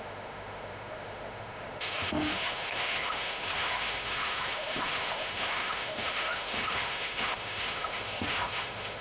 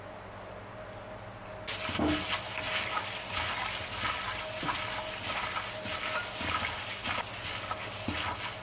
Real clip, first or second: second